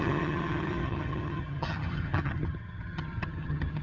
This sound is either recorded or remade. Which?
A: remade